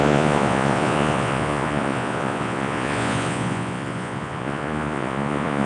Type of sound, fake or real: fake